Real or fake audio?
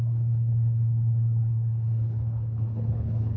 fake